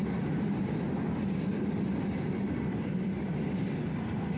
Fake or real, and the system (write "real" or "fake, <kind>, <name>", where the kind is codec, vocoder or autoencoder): real